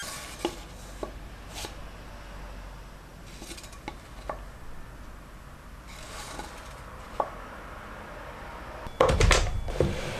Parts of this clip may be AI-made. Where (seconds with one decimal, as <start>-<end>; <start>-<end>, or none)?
none